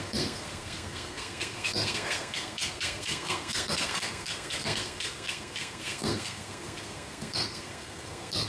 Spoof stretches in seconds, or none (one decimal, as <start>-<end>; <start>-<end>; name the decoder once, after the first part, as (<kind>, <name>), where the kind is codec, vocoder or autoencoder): 0.0-8.5 (codec, SNAC)